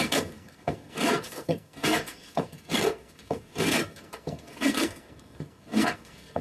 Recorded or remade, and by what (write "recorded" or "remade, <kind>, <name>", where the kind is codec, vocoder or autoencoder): remade, codec, SNAC